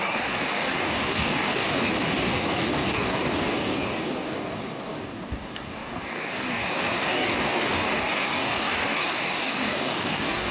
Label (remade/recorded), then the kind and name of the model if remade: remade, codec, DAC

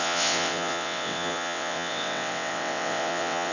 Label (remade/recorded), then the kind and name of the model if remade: remade, vocoder, WaveNeXt